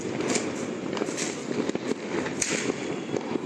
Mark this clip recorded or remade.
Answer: recorded